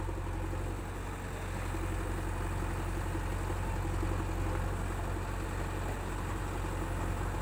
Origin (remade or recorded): recorded